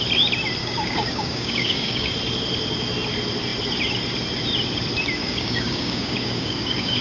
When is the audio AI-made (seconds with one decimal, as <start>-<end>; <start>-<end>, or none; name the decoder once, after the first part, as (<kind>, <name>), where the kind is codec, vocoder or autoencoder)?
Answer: 0.6-2.1 (codec, DAC); 5.2-7.0

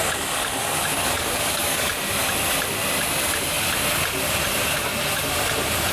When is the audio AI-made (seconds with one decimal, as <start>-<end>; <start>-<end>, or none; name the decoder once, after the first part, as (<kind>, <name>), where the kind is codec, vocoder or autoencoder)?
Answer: 0.6-1.9 (codec, DAC)

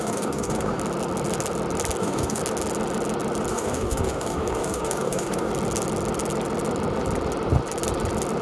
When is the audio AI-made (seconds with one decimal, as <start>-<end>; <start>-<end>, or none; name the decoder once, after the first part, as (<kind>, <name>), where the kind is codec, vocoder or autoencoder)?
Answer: 0.0-0.8 (codec, DAC); 2.0-2.4; 3.5-5.5

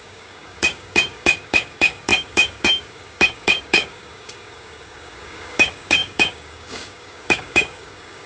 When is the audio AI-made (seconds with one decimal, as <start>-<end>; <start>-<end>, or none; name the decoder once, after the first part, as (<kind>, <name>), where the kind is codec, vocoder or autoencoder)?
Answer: 0.0-8.3 (codec, DAC)

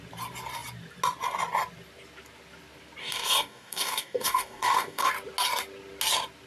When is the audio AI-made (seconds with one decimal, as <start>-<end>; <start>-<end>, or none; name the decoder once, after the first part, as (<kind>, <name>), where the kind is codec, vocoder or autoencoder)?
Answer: 3.0-5.1 (codec, DAC)

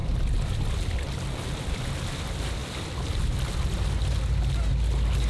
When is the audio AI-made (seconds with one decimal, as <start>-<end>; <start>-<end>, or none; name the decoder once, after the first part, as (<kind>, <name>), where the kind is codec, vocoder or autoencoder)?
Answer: none